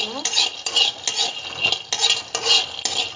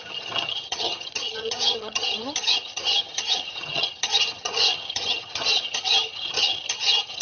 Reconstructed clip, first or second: second